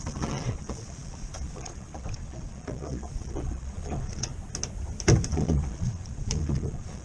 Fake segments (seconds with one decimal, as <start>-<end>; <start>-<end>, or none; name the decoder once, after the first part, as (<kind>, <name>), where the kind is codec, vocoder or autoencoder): 0.0-4.3 (vocoder, Vocos); 5.3-7.0